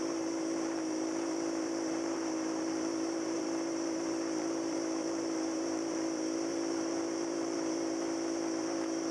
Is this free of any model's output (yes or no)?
no